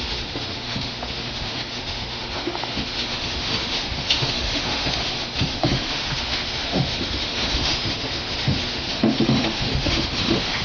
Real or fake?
fake